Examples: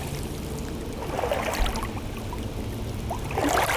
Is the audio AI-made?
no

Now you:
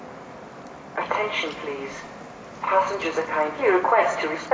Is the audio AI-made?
no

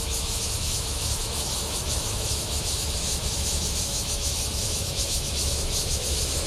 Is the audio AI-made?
yes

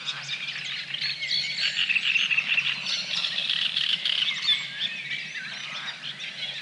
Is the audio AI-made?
no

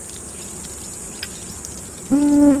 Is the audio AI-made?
no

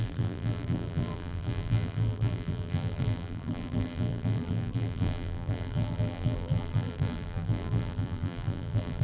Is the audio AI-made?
yes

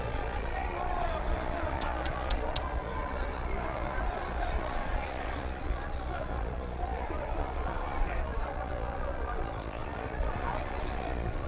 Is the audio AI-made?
yes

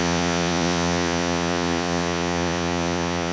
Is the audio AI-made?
yes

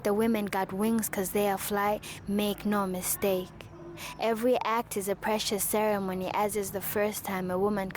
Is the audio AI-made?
no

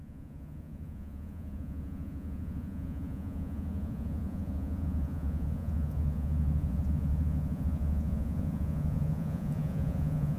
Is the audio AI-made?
yes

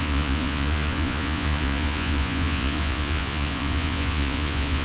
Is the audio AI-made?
yes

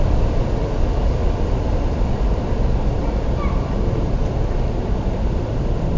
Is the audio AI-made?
no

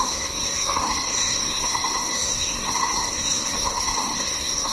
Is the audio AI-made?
yes